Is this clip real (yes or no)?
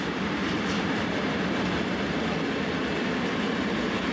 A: yes